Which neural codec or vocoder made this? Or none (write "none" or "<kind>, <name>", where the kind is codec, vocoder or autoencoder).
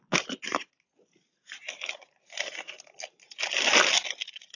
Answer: none